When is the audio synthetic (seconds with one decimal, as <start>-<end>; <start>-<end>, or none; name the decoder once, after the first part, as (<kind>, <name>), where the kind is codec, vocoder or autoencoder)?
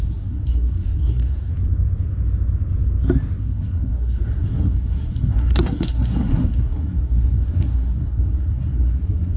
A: 0.0-1.5 (codec, SNAC); 3.4-9.4